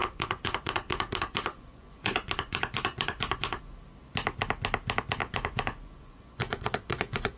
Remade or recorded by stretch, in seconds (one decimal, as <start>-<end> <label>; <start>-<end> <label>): 0.0-3.6 remade; 3.6-5.2 recorded; 5.2-7.4 remade